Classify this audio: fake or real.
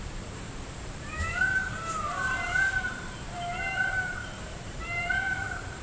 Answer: fake